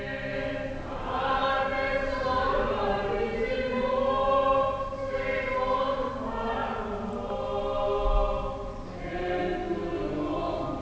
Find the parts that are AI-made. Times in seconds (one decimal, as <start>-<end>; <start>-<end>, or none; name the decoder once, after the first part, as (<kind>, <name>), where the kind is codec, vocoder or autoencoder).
1.4-3.0 (vocoder, BigVGAN v2)